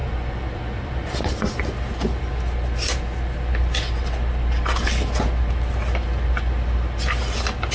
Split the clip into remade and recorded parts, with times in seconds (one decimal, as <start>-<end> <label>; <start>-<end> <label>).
0.0-7.7 recorded